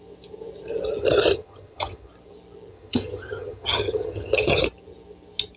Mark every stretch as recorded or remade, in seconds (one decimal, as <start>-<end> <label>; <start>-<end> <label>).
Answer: 0.0-1.0 recorded; 1.0-2.1 remade; 2.1-2.7 recorded; 2.7-4.6 remade; 4.6-5.6 recorded

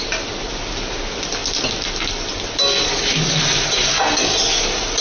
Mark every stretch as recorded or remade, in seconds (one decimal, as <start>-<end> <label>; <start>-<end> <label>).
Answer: 0.0-5.0 recorded

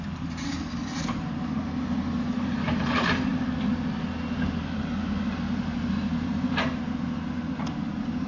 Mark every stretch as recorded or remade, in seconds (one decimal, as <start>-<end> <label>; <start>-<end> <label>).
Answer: 0.0-8.3 recorded

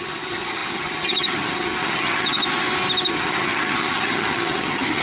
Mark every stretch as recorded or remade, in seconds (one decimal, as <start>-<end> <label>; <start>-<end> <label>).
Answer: 0.0-2.4 remade; 2.4-3.1 recorded; 3.1-5.0 remade

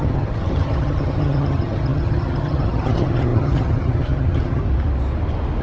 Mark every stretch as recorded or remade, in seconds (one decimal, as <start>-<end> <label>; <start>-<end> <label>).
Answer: 0.0-4.6 remade; 4.6-5.6 recorded

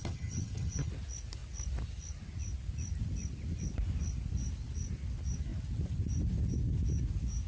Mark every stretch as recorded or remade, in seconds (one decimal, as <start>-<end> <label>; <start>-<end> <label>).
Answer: 0.0-0.9 remade; 0.9-7.5 recorded